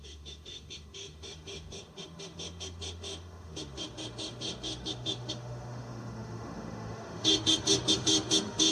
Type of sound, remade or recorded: remade